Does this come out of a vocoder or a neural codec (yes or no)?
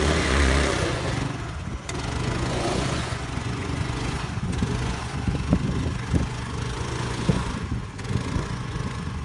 yes